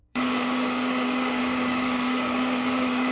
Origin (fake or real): fake